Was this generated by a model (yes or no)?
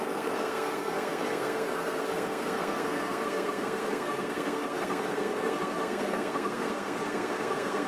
yes